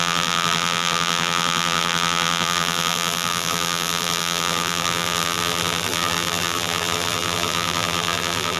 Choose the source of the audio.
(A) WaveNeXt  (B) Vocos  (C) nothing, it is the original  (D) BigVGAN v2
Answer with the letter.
D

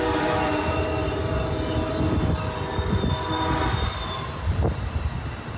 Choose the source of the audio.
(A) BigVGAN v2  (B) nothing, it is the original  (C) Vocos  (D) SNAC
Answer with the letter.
B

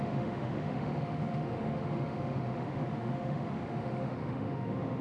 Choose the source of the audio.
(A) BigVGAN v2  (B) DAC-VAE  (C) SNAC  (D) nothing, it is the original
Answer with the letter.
B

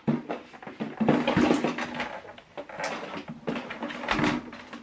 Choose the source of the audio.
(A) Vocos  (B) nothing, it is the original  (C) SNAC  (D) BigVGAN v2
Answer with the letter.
B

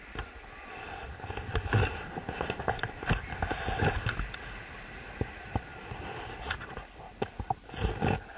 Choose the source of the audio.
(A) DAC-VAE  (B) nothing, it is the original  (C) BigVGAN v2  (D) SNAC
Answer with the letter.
B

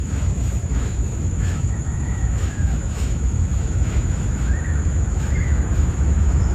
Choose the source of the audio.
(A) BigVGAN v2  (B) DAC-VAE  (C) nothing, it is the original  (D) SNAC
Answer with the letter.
B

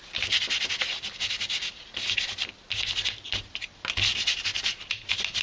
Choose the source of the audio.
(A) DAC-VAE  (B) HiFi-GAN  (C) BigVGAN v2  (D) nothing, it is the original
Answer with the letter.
D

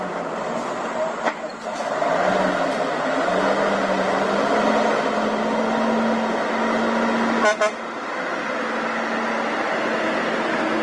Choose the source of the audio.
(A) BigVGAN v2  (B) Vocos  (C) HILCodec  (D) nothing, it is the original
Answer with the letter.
D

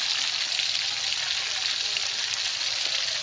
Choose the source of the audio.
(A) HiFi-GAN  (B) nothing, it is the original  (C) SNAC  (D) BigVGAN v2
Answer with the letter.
B